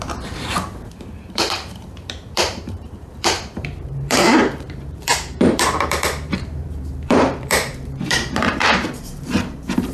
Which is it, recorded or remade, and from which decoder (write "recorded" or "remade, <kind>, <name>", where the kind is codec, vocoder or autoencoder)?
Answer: remade, vocoder, BigVGAN v2